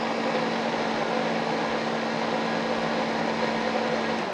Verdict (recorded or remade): recorded